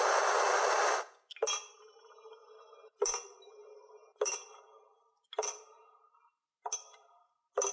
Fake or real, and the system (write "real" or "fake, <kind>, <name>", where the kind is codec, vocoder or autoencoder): real